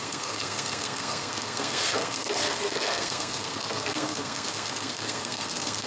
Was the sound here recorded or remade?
remade